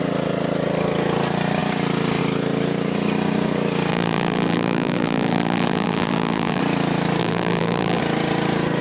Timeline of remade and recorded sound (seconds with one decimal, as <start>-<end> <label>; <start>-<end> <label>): 0.0-3.9 recorded; 3.9-6.6 remade; 6.6-7.2 recorded; 7.2-8.0 remade; 8.0-8.8 recorded